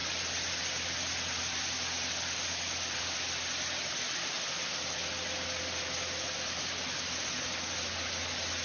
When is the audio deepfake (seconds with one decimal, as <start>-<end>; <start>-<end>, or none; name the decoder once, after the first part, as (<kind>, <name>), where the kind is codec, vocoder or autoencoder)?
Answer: none

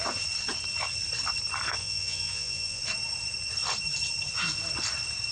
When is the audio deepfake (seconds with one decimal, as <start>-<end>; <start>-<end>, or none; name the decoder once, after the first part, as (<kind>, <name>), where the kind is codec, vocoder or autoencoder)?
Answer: 1.8-2.8 (vocoder, Vocos)